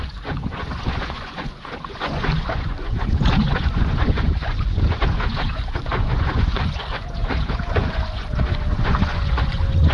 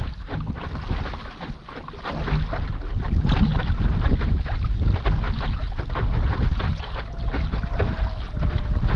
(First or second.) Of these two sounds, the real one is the second